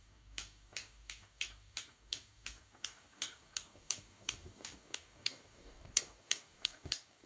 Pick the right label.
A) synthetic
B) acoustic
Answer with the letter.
A